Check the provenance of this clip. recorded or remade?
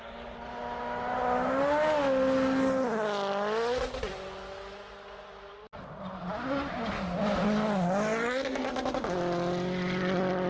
recorded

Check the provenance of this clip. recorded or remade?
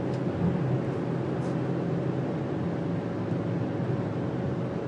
recorded